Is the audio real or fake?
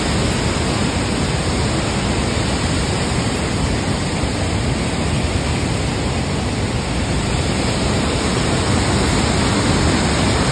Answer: real